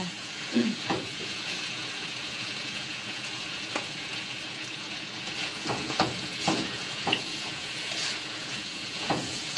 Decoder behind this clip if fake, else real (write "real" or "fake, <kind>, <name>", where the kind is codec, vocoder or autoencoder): fake, vocoder, Vocos